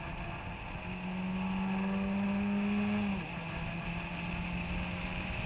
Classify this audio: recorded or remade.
recorded